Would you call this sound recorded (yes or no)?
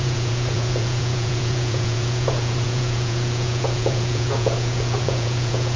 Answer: no